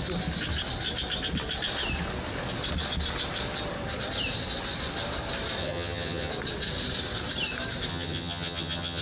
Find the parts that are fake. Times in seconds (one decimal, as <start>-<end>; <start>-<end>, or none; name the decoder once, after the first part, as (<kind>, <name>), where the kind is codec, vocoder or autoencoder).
5.6-6.3 (vocoder, HiFi-GAN); 7.9-9.0